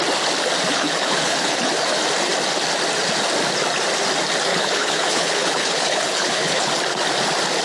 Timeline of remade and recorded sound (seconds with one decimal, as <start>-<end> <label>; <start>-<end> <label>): 0.0-0.7 recorded; 0.7-1.7 remade; 1.7-4.5 recorded; 4.5-6.7 remade; 6.7-7.6 recorded

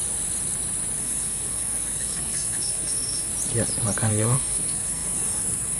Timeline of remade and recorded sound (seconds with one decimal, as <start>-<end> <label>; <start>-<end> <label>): 0.0-1.0 recorded; 1.0-3.3 remade; 3.3-4.1 recorded; 4.1-5.8 remade

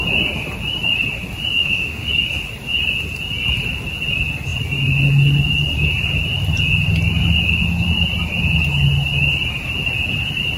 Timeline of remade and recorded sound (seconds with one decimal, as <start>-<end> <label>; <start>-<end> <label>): 0.0-1.6 recorded; 1.6-2.1 remade; 2.1-10.6 recorded

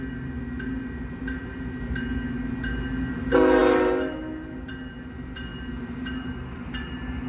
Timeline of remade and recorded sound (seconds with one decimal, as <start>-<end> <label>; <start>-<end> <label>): 0.0-7.3 recorded

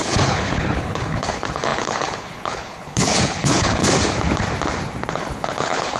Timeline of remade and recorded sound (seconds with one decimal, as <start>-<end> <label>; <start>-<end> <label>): 0.0-3.8 remade; 3.8-5.1 recorded; 5.1-6.0 remade